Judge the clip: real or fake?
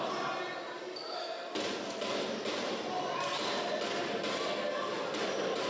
real